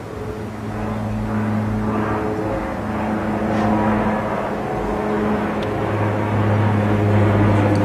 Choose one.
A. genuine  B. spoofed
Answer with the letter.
A